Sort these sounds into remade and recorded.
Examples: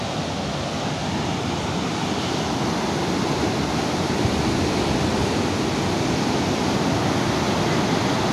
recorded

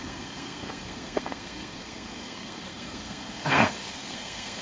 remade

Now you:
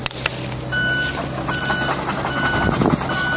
recorded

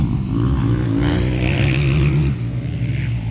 recorded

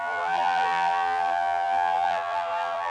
remade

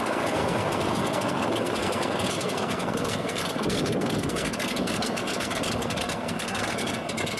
remade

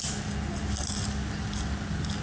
recorded